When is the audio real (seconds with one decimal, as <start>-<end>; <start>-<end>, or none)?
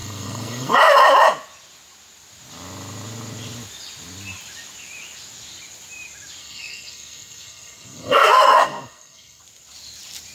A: 0.8-6.4; 9.4-10.3